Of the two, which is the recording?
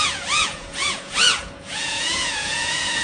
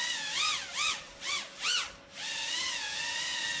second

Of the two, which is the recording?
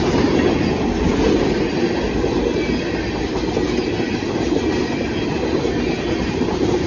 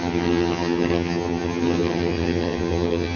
first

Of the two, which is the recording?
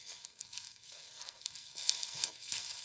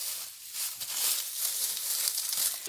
second